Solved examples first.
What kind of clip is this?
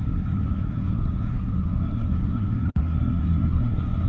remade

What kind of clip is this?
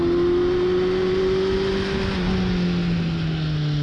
recorded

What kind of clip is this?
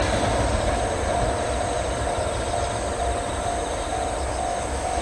recorded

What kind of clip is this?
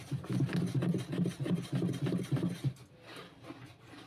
recorded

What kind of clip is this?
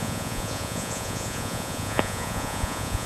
remade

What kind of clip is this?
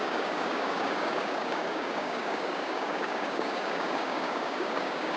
remade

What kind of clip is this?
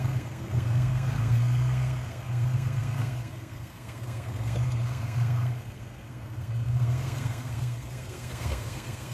remade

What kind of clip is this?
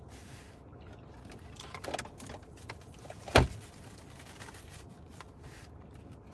recorded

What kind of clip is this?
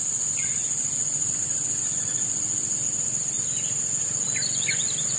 recorded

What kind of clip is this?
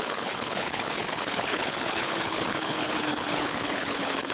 remade